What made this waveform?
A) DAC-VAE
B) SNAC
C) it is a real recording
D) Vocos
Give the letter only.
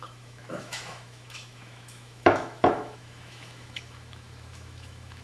A